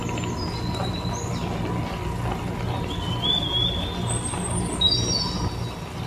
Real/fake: real